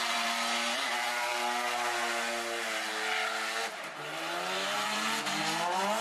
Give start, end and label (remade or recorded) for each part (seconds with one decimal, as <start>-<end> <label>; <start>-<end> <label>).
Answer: 0.0-1.3 remade; 1.3-3.6 recorded; 3.6-6.0 remade